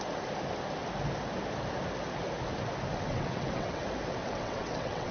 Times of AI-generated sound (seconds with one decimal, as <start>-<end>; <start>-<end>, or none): 3.1-3.8; 4.2-5.1